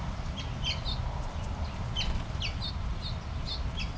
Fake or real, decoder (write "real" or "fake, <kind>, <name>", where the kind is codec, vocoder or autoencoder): real